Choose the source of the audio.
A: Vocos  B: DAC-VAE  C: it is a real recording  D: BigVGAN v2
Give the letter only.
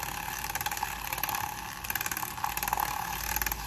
C